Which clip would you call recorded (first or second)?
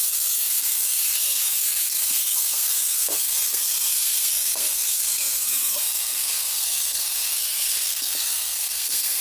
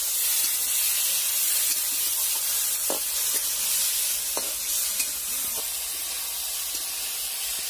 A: second